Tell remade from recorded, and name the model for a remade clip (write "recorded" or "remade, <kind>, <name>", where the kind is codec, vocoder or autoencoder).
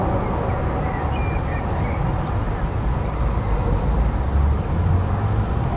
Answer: recorded